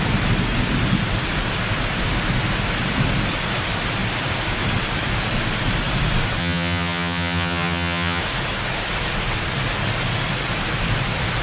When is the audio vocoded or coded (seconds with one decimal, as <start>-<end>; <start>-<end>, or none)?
6.4-8.2

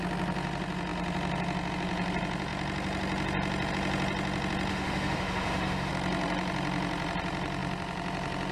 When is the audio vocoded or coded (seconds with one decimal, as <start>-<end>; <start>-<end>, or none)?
4.7-5.9

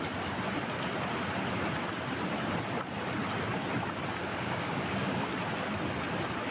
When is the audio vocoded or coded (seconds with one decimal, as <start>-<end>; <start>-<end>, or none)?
4.3-5.3

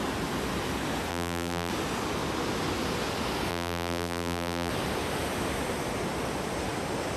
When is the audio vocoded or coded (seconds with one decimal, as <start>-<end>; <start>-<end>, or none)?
1.1-1.7; 3.5-4.7

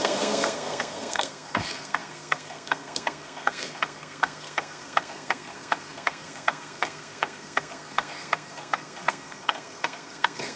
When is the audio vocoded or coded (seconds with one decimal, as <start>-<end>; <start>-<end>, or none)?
0.0-10.6

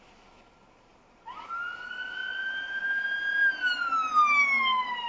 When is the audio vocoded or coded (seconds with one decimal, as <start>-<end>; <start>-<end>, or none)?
none

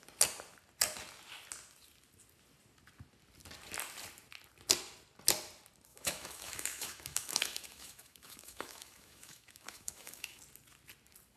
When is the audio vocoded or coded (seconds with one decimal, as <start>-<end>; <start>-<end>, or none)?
5.9-10.4